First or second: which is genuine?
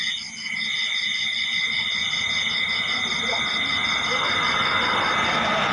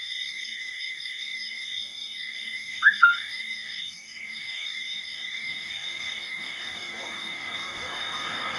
first